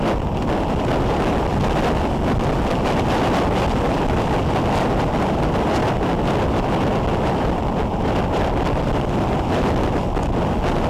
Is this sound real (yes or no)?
yes